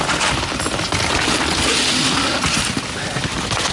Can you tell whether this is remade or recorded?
recorded